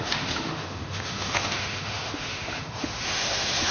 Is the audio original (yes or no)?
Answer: no